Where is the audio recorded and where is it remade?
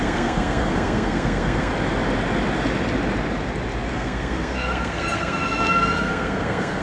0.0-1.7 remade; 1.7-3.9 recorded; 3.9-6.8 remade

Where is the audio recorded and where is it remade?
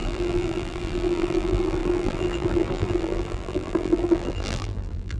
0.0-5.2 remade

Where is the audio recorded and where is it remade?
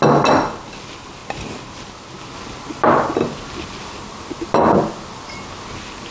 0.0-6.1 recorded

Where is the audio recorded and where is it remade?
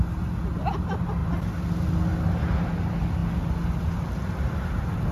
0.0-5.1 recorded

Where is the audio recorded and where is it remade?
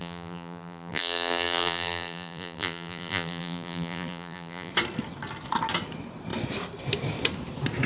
0.0-4.7 remade; 4.7-7.9 recorded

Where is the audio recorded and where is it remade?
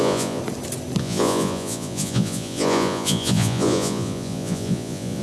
0.0-0.4 remade; 0.4-1.0 recorded; 1.0-5.2 remade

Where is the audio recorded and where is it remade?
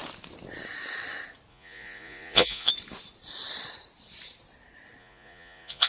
0.0-1.5 recorded; 1.5-2.7 remade; 2.7-5.0 recorded; 5.0-5.9 remade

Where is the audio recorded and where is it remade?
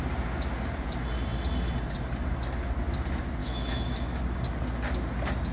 0.0-3.4 recorded; 3.4-4.2 remade; 4.2-5.5 recorded